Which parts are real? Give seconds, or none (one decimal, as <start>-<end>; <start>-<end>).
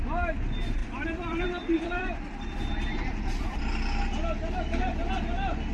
0.0-0.8; 3.6-5.7